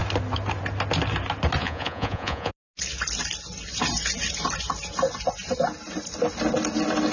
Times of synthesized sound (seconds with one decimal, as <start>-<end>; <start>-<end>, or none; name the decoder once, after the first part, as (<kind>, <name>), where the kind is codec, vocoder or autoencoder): 1.6-2.5 (vocoder, Vocos)